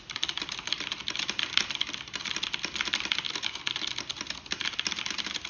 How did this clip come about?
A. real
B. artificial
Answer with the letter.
A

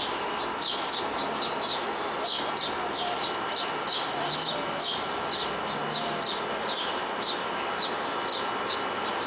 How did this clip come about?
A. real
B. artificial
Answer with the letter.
A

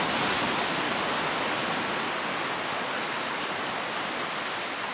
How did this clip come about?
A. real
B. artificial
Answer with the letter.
A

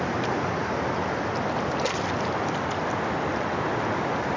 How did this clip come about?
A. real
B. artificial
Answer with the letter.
A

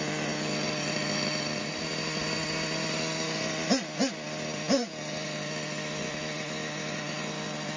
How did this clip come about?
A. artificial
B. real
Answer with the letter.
B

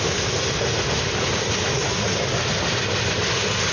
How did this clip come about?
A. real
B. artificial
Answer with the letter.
A